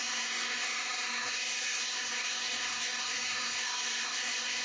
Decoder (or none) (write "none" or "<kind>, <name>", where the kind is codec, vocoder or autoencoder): codec, SNAC